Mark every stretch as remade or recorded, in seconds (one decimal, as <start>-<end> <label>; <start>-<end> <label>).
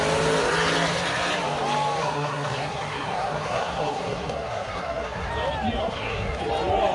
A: 0.0-2.0 recorded; 2.0-5.3 remade; 5.3-5.8 recorded; 5.8-6.4 remade; 6.4-6.9 recorded